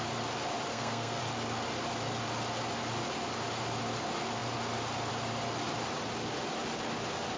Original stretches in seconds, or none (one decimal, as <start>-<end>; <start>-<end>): 0.0-0.7; 1.2-7.4